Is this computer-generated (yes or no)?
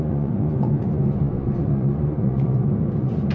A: yes